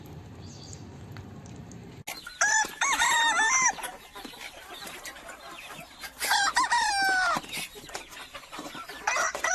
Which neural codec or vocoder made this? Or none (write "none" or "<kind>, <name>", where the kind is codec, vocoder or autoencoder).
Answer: none